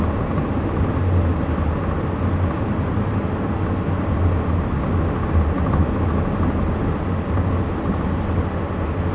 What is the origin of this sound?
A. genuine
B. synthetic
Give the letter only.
A